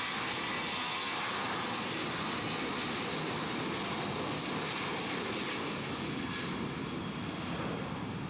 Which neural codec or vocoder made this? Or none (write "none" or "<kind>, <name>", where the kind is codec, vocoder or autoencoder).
none